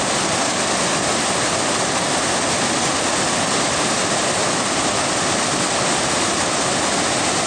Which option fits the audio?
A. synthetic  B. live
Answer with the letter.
B